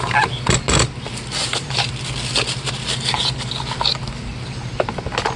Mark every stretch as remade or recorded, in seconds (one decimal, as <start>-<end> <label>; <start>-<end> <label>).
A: 0.0-1.4 recorded; 1.4-1.9 remade; 1.9-5.4 recorded